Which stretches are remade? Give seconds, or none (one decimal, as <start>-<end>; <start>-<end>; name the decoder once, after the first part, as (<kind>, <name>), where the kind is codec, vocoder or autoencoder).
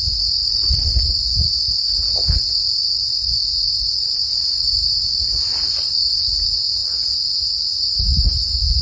none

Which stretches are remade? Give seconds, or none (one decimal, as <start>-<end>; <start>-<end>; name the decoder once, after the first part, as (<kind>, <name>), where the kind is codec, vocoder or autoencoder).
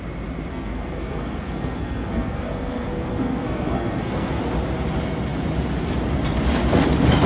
0.5-4.4 (codec, SNAC)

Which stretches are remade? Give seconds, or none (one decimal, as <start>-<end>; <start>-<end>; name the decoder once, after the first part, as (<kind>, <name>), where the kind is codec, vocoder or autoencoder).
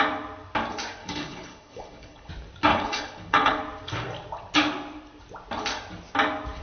1.0-2.3 (codec, HILCodec); 2.7-3.6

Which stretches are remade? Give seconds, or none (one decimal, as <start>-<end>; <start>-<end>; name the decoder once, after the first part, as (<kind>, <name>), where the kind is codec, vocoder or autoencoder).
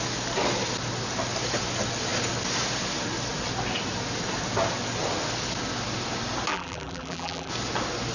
6.5-7.5 (vocoder, BigVGAN v2)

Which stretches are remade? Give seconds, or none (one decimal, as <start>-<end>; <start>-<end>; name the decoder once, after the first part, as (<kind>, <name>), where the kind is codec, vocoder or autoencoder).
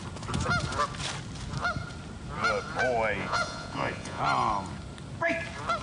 3.2-4.2 (vocoder, Vocos)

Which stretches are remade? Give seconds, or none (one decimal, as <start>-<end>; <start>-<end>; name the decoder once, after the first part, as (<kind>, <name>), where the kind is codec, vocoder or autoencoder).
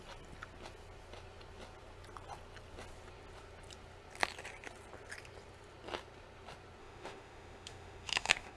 6.8-8.6 (autoencoder, DAC-VAE)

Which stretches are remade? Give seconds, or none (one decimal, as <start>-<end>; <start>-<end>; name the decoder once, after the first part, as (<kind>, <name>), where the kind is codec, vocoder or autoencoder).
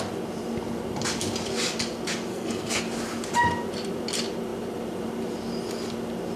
2.3-2.8 (codec, SNAC)